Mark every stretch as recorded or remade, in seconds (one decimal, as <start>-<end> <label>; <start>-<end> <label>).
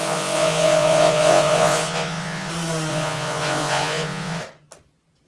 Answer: 0.0-2.5 remade; 2.5-2.9 recorded; 2.9-4.4 remade; 4.4-5.3 recorded